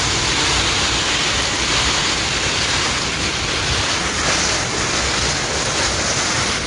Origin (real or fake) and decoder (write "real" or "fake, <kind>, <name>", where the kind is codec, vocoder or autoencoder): real